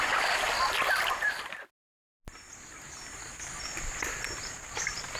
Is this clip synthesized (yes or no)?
no